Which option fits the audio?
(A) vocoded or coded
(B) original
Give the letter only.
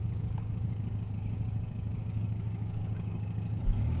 A